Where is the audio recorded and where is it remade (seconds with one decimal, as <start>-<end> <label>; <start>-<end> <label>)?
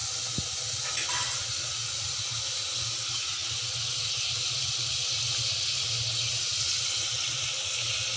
0.0-8.2 recorded